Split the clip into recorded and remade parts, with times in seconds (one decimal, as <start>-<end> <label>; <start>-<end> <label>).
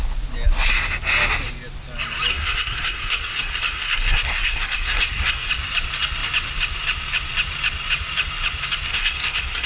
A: 0.0-2.3 recorded; 2.3-5.5 remade; 5.5-8.9 recorded; 8.9-9.7 remade